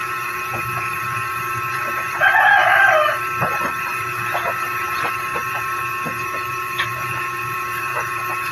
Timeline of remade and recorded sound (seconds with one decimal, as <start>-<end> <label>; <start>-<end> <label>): 0.0-2.6 remade; 2.6-3.9 recorded; 3.9-8.5 remade